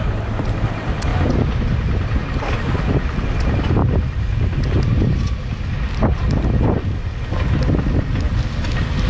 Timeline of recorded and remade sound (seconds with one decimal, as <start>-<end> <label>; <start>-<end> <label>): 0.0-1.1 recorded; 1.1-2.2 remade; 2.2-9.1 recorded